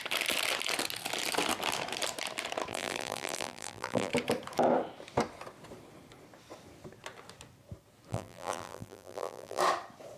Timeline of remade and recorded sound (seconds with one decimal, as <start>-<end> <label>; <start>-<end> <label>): 0.0-2.7 recorded; 2.7-4.1 remade; 4.1-8.1 recorded; 8.1-9.6 remade; 9.6-10.2 recorded